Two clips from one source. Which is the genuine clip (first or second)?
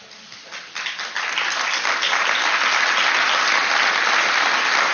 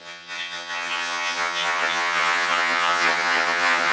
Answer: first